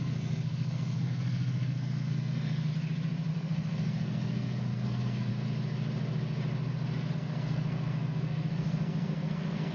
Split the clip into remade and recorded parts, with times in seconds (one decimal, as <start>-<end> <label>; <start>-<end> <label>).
0.0-2.7 remade; 2.7-3.3 recorded; 3.3-5.3 remade; 5.3-7.1 recorded; 7.1-9.7 remade